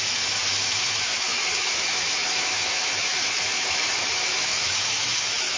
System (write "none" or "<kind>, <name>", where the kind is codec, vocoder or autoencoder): autoencoder, DAC-VAE